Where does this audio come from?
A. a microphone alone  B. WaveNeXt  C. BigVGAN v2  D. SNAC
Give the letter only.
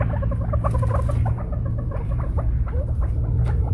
C